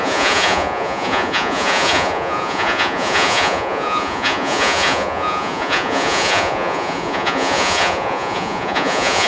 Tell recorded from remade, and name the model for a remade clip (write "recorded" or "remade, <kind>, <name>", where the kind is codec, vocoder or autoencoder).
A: remade, vocoder, Vocos